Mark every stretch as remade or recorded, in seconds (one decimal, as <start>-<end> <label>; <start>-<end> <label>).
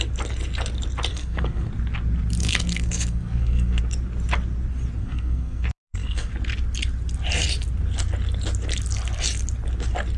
0.0-1.1 recorded; 1.1-1.7 remade; 1.7-2.4 recorded; 2.4-3.8 remade; 3.8-5.0 recorded; 5.0-6.3 remade; 6.3-10.2 recorded